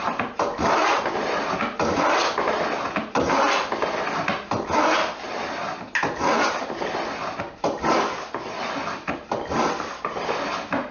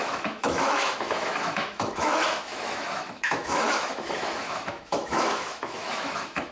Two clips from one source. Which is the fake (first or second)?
second